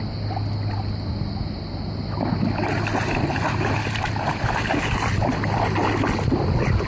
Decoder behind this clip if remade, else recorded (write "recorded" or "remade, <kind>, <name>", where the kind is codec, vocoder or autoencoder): recorded